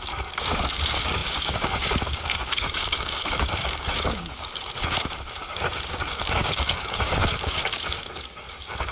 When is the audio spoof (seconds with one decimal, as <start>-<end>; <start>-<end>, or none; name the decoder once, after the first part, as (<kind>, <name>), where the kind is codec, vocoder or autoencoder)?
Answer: 0.0-8.9 (codec, DAC)